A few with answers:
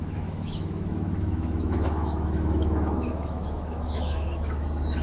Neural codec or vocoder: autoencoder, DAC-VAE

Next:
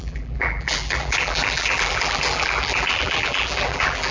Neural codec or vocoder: vocoder, BigVGAN v2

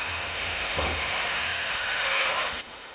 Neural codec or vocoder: autoencoder, DAC-VAE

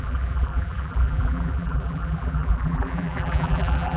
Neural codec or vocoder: vocoder, BigVGAN v2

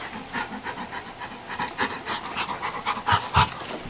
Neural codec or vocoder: none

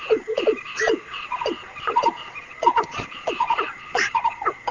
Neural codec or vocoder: vocoder, Vocos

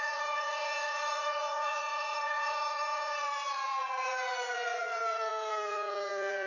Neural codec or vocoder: vocoder, Vocos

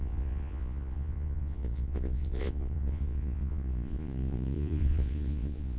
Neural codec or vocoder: vocoder, Vocos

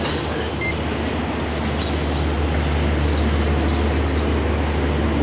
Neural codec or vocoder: none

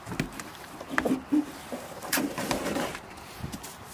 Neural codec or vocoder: none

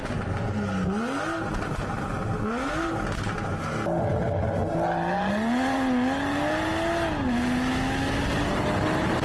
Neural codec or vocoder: none